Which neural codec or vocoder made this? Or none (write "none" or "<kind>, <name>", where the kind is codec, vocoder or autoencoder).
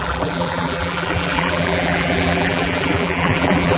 vocoder, BigVGAN v2